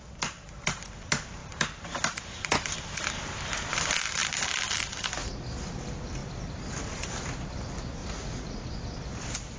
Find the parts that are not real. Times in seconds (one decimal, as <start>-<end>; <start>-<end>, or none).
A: 8.0-8.7